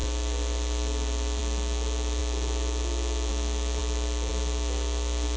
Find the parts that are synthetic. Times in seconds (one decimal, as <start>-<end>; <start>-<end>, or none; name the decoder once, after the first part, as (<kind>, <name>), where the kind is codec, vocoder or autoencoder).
none